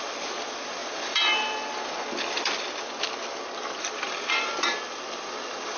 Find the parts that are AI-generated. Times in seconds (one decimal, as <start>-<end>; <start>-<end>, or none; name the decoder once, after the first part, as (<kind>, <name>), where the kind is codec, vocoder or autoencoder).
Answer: 0.0-5.8 (vocoder, BigVGAN v2)